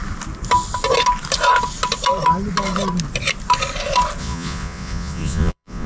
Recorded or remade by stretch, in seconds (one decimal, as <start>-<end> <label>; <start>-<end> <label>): 0.0-4.2 recorded; 4.2-5.9 remade